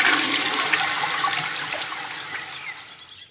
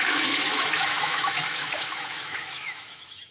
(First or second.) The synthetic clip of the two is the second